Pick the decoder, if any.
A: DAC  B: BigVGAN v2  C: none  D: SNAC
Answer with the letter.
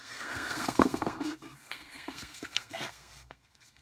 D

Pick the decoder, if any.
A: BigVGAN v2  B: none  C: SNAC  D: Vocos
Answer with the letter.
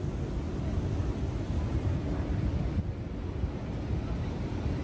B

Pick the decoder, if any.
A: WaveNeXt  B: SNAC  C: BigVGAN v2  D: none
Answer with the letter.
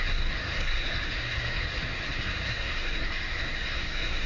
B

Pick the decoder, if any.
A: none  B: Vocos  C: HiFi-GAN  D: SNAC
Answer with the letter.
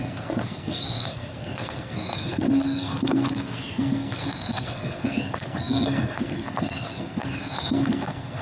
D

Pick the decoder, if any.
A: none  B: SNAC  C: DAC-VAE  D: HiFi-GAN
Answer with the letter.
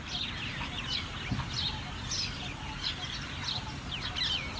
A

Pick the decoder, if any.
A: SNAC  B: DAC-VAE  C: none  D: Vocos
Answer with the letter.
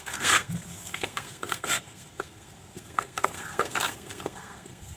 A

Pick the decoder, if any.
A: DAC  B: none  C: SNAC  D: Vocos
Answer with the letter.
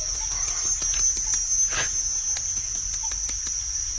B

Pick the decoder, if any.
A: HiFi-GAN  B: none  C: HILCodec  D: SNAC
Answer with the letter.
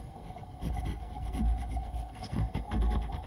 D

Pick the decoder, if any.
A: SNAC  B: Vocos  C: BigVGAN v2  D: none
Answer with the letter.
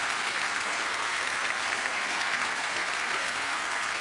A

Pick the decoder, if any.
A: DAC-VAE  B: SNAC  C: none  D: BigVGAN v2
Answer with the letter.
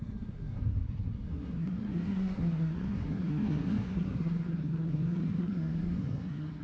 B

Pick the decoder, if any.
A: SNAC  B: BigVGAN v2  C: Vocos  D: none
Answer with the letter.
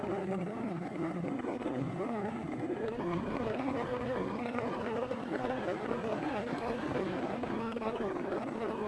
A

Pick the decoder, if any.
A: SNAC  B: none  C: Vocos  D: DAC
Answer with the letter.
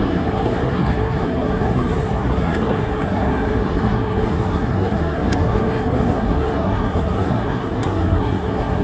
A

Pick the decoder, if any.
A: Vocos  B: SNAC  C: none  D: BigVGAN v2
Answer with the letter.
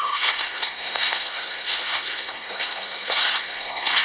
B